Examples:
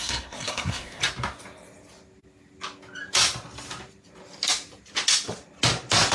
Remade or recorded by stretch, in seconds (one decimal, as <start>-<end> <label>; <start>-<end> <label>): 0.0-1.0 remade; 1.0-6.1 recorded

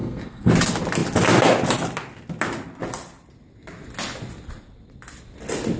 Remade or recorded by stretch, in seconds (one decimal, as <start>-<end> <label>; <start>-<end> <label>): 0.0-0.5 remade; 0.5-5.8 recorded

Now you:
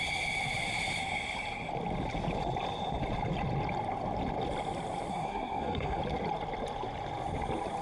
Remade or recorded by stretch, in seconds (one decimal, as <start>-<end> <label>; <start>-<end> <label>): 0.0-5.1 recorded; 5.1-6.0 remade; 6.0-7.8 recorded

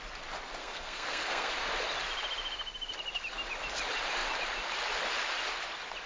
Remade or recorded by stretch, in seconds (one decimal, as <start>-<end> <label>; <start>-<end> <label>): 0.0-0.6 recorded; 0.6-1.5 remade; 1.5-6.1 recorded

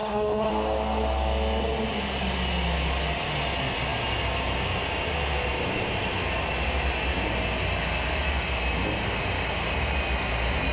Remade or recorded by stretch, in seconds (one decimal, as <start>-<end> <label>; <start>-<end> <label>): 0.0-0.5 remade; 0.5-10.7 recorded

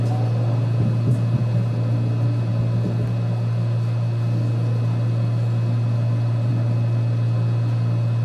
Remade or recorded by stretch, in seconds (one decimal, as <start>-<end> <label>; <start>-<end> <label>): 0.0-8.2 recorded